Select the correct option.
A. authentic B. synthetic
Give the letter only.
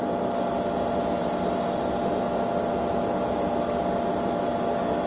A